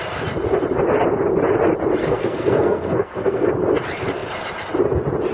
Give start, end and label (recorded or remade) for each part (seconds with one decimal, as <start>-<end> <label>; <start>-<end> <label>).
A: 0.0-2.0 recorded; 2.0-3.5 remade; 3.5-5.3 recorded